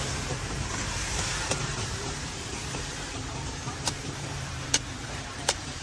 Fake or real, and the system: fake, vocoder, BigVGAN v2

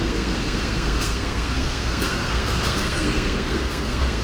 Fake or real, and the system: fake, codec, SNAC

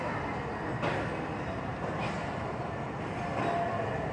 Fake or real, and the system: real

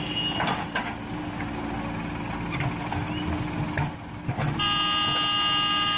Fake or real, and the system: real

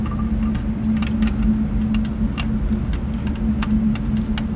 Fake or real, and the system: real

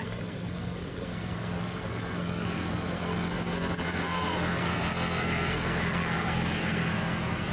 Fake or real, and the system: fake, codec, SNAC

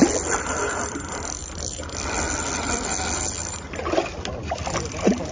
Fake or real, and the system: real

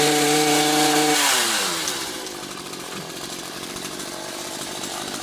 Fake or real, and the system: fake, vocoder, BigVGAN v2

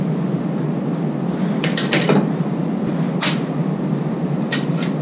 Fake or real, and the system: real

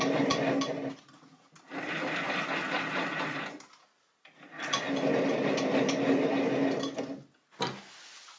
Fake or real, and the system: real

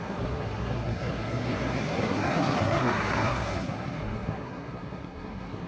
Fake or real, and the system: fake, codec, SNAC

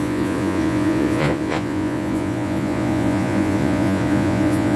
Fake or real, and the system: fake, vocoder, Vocos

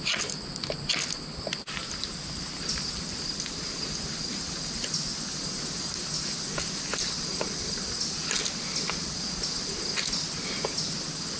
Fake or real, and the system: real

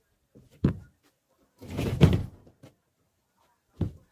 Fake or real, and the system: real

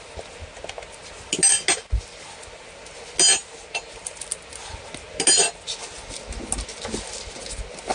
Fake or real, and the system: real